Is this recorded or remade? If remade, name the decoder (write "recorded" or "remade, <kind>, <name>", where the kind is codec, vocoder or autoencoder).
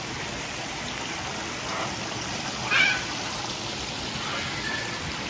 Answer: recorded